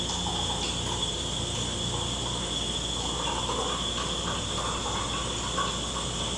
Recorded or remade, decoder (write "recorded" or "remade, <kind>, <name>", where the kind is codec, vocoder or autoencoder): recorded